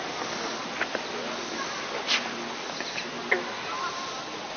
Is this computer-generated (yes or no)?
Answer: no